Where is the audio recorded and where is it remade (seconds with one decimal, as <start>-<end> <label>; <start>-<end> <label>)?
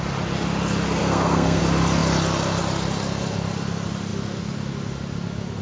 0.0-1.0 recorded; 1.0-1.6 remade; 1.6-5.6 recorded